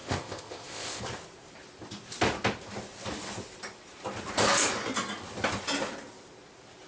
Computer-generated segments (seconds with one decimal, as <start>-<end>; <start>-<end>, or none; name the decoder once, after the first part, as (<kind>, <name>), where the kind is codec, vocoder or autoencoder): 0.0-1.0 (codec, ZipCodec)